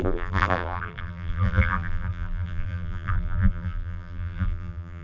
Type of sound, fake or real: fake